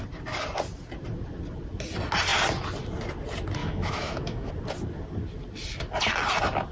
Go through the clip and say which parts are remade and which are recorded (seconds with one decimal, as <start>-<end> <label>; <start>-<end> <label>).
0.0-3.6 recorded; 3.6-4.5 remade; 4.5-6.7 recorded